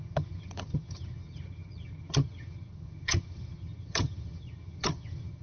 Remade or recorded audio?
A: remade